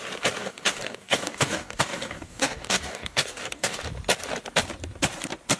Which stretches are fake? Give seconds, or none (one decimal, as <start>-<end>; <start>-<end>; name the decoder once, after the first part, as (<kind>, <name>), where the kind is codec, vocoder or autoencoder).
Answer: 0.4-3.8 (codec, DAC)